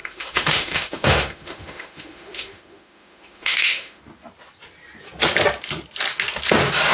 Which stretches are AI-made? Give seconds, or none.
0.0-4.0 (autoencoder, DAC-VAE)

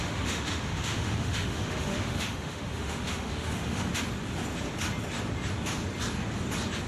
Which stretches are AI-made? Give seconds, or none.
0.0-3.9 (autoencoder, DAC-VAE)

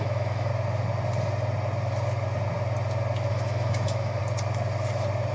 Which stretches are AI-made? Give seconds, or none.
0.0-0.5 (autoencoder, DAC-VAE); 3.3-4.2

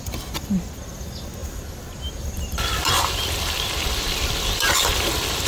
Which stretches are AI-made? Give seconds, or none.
none